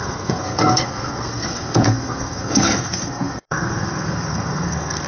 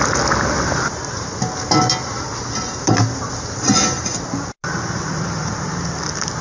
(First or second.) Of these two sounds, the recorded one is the second